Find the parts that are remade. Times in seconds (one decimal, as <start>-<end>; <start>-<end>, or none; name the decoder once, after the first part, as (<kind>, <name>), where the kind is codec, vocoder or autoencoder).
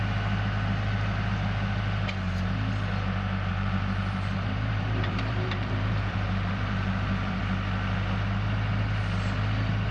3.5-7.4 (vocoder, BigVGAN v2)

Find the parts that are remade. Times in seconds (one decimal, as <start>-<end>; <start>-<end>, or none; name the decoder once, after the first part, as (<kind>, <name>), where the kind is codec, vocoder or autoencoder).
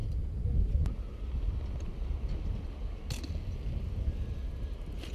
0.0-0.9 (vocoder, BigVGAN v2); 4.4-5.1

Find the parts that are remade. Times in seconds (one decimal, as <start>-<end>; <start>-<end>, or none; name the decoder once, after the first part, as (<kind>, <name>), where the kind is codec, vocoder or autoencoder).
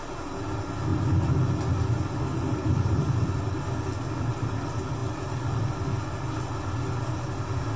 0.9-3.5 (vocoder, BigVGAN v2); 5.0-5.6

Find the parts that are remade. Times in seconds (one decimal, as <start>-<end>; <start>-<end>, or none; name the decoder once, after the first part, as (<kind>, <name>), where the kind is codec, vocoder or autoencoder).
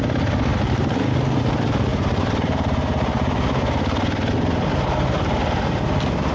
1.9-3.3 (vocoder, BigVGAN v2)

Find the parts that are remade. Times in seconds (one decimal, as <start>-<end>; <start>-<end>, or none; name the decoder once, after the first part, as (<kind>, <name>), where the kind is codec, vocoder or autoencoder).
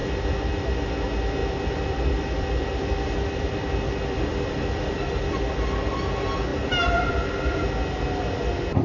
1.4-4.9 (vocoder, BigVGAN v2); 6.5-7.1